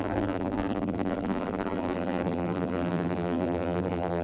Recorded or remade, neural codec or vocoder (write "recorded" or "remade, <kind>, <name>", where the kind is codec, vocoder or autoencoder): remade, vocoder, BigVGAN v2